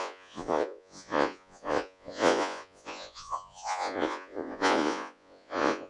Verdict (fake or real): fake